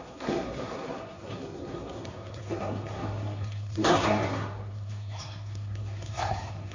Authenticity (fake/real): fake